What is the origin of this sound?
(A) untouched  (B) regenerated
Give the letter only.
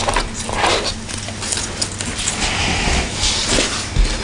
A